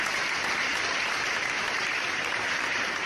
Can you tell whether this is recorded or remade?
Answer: recorded